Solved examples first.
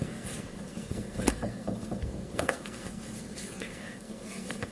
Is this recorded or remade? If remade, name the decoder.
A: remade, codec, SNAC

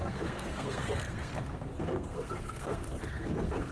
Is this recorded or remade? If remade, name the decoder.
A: remade, codec, SNAC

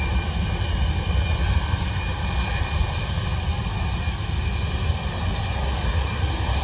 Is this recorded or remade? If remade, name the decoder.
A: recorded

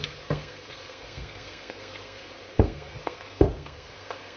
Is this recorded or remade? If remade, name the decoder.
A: remade, codec, SNAC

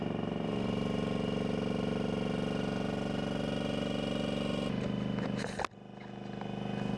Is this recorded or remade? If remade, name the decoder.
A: recorded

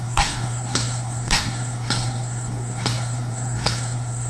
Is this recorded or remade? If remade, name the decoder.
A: remade, codec, SNAC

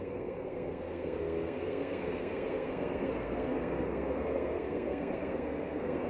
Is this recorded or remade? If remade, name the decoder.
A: remade, codec, SNAC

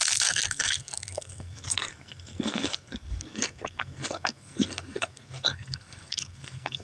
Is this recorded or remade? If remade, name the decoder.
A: remade, codec, SNAC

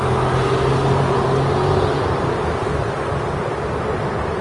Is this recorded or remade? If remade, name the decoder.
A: recorded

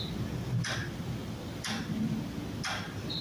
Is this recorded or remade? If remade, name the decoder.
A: recorded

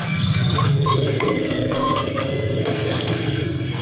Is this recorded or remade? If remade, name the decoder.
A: remade, codec, SNAC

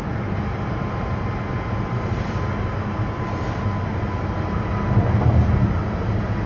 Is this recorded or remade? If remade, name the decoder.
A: recorded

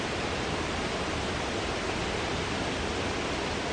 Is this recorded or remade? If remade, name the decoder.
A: recorded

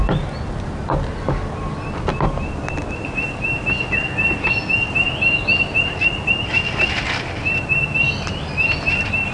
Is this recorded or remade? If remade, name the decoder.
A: recorded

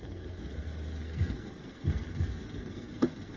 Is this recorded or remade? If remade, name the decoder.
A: remade, codec, SNAC